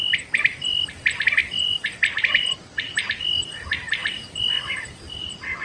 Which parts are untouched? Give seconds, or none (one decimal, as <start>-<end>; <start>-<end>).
1.4-2.8